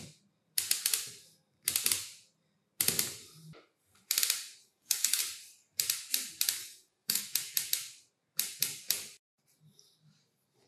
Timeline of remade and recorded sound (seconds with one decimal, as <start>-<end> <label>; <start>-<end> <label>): 0.0-4.6 recorded; 4.6-5.2 remade; 5.2-6.6 recorded; 6.6-7.2 remade; 7.2-10.7 recorded